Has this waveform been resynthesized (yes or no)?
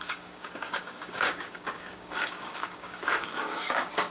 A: yes